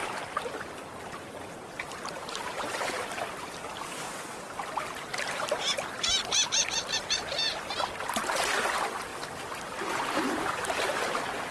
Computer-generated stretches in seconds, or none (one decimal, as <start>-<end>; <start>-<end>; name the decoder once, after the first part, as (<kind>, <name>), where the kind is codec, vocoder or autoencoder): 5.1-6.2 (vocoder, BigVGAN v2)